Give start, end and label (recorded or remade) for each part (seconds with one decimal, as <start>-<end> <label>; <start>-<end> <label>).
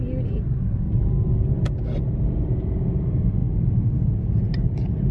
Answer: 0.0-5.1 recorded